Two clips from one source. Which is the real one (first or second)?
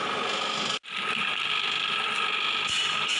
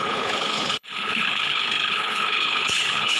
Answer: first